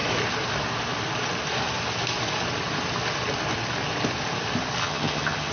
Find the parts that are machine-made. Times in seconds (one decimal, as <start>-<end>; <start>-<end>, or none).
4.8-5.5